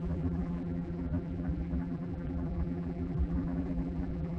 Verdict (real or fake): fake